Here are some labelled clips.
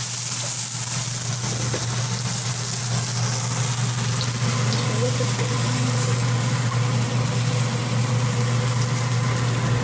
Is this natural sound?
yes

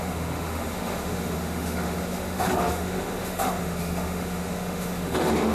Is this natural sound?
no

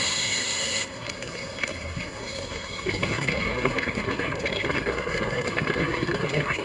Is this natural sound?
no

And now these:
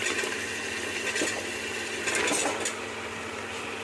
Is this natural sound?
yes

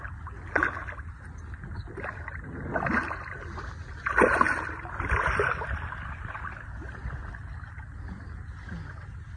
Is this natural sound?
yes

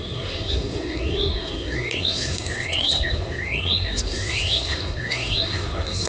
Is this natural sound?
no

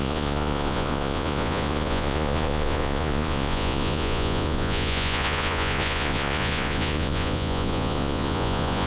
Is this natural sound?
no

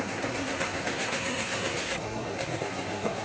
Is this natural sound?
no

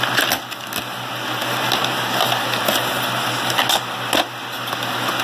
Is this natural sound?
yes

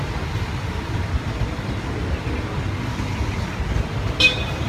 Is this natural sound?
yes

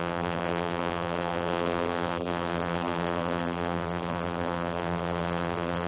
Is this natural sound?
no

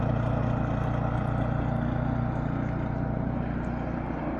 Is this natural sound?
yes